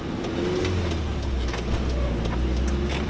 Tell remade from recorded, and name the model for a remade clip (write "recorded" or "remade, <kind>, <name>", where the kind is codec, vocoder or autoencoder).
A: recorded